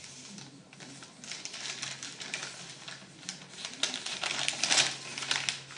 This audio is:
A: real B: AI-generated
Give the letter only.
A